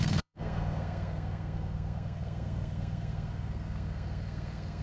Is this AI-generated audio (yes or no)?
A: yes